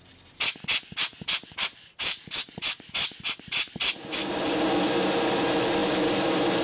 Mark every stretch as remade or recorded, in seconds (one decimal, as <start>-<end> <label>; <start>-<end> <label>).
0.0-1.1 recorded; 1.1-3.8 remade; 3.8-6.6 recorded